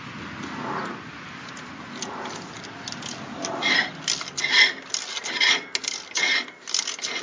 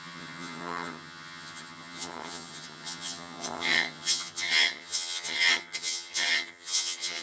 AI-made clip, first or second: second